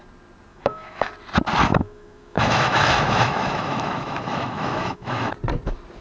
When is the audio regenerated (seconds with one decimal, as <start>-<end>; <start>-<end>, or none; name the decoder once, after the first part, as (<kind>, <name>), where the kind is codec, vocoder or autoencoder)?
0.5-1.1 (autoencoder, DAC-VAE); 1.7-5.3